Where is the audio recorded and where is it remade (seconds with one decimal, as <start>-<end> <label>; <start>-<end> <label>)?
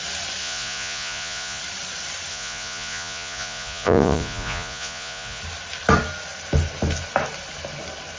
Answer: 0.0-0.4 recorded; 0.4-1.6 remade; 1.6-2.3 recorded; 2.3-5.4 remade; 5.4-8.2 recorded